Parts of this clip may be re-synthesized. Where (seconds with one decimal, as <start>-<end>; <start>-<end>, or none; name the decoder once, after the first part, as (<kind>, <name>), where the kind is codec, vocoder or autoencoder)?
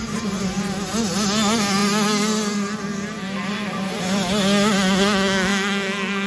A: none